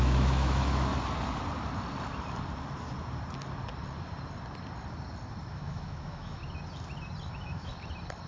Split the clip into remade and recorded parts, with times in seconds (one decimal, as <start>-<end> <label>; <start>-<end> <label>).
0.0-0.9 remade; 0.9-5.5 recorded; 5.5-6.4 remade; 6.4-7.3 recorded; 7.3-7.7 remade; 7.7-8.3 recorded